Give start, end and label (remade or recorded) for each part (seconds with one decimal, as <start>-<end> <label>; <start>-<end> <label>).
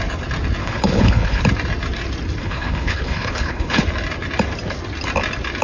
0.0-0.6 recorded; 0.6-1.4 remade; 1.4-2.4 recorded; 2.4-3.8 remade; 3.8-5.6 recorded